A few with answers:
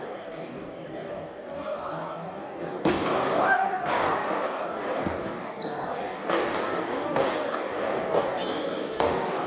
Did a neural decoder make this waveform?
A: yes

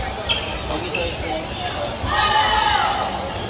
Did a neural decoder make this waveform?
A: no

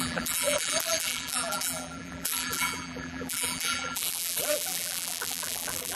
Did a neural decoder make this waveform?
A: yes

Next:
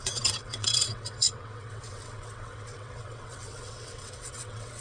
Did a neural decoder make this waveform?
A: yes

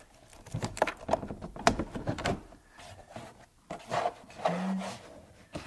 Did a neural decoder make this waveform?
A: no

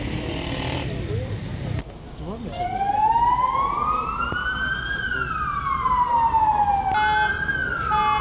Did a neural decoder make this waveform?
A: no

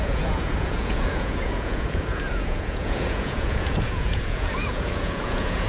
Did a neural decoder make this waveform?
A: yes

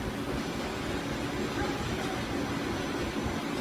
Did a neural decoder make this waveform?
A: no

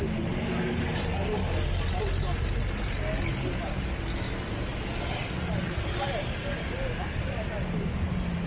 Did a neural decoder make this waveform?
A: no